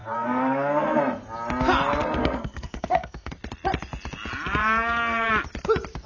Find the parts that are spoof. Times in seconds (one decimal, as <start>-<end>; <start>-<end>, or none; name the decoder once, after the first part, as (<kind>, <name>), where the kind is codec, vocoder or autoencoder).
0.0-1.0 (codec, SNAC); 2.2-3.3; 4.6-5.3